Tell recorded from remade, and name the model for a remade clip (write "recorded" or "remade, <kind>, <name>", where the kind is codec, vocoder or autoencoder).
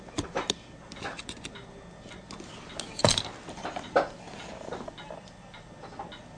recorded